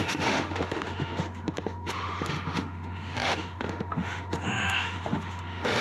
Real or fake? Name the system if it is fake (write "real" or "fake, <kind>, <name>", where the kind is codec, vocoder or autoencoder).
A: fake, autoencoder, DAC-VAE